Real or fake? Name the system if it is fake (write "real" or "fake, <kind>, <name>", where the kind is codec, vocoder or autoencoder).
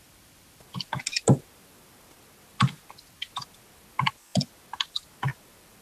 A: real